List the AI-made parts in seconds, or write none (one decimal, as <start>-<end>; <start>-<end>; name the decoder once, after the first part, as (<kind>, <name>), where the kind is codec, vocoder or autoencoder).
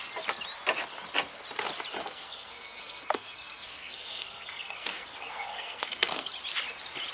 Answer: 2.0-6.3 (codec, SNAC)